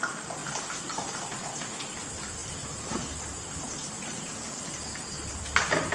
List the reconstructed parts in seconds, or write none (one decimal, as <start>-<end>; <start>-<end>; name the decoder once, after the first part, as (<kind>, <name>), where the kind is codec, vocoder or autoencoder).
none